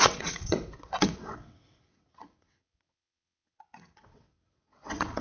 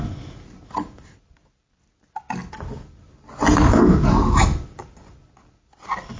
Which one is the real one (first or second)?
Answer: second